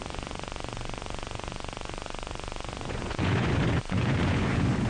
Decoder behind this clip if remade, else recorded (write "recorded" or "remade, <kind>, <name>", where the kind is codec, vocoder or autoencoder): remade, vocoder, Vocos